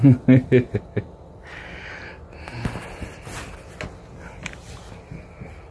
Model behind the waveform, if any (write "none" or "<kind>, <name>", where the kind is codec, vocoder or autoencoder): none